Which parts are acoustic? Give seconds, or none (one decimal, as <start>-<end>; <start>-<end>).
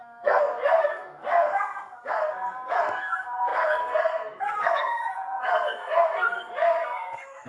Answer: none